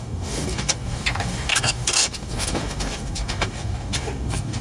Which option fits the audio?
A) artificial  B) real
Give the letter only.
A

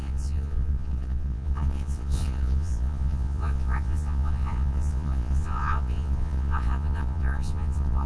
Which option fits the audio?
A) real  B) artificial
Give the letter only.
B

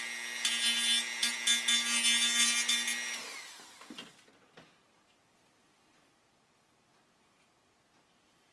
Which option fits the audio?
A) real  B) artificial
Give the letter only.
A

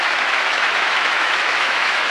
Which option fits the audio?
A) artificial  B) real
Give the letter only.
A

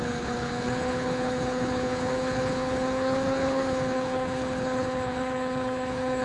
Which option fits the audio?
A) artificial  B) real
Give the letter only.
A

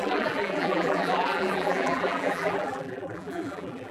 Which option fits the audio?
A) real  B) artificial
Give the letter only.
B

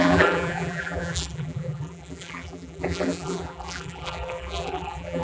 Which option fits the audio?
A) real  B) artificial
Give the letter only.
B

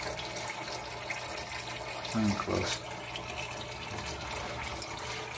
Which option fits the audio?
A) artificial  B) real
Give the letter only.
B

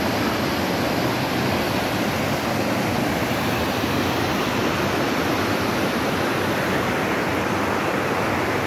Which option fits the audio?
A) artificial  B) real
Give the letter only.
B